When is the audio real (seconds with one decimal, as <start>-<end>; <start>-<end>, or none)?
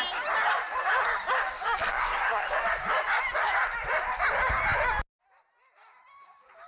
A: 0.0-1.9; 2.5-6.7